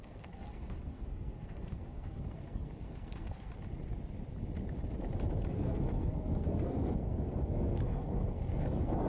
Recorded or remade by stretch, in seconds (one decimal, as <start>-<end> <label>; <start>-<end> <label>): 0.0-3.5 remade; 3.5-5.5 recorded; 5.5-9.1 remade